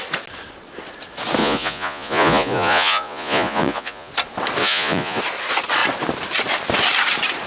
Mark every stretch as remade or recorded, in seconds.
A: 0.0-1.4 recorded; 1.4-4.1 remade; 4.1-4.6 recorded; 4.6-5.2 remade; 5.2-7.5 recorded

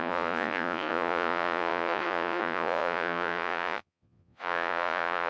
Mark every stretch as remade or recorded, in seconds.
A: 0.0-5.3 remade

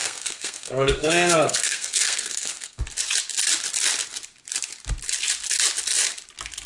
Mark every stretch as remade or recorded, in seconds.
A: 0.0-2.8 remade; 2.8-6.7 recorded

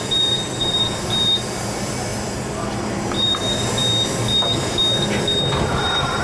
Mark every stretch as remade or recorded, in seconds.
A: 0.0-3.8 remade; 3.8-5.8 recorded; 5.8-6.2 remade

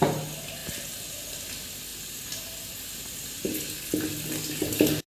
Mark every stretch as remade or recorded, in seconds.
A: 0.0-5.1 recorded

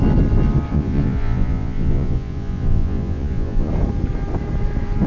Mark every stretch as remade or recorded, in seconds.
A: 0.0-0.7 recorded; 0.7-3.7 remade; 3.7-5.1 recorded

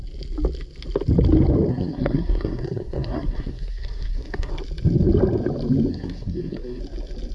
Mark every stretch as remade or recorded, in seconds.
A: 0.0-1.7 recorded; 1.7-4.5 remade; 4.5-5.9 recorded; 5.9-6.8 remade; 6.8-7.3 recorded

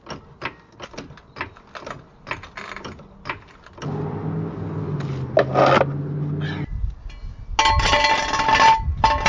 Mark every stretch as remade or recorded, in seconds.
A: 0.0-9.3 recorded